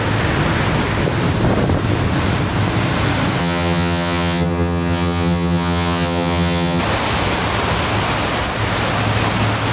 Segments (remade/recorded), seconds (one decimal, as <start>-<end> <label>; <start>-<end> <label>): 0.0-3.4 recorded; 3.4-6.8 remade; 6.8-9.7 recorded